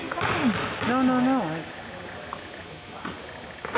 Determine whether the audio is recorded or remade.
recorded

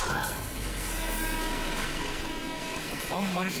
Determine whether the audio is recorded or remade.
remade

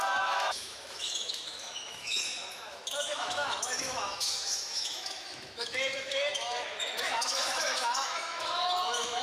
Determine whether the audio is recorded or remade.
remade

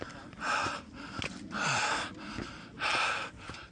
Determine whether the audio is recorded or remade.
recorded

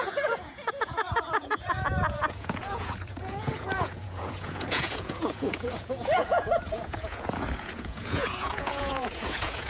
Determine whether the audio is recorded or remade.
remade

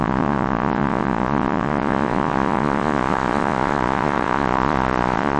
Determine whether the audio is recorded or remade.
remade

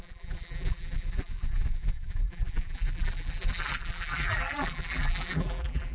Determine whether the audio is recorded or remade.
remade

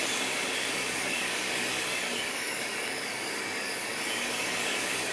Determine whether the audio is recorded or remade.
remade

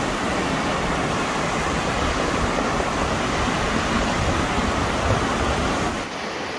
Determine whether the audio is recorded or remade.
recorded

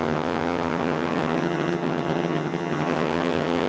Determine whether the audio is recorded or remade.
remade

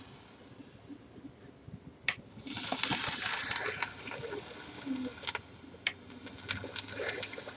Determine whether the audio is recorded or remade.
recorded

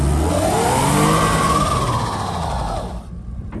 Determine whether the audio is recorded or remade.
recorded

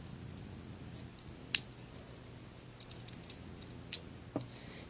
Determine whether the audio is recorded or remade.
recorded